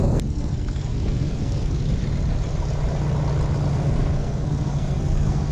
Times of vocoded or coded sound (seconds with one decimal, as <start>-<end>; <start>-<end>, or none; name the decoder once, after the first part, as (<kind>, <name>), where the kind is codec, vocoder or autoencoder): 0.0-1.8 (codec, SNAC); 3.7-5.5